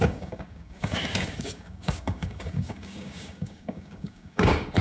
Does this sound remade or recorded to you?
remade